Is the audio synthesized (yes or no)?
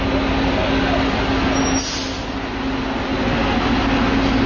no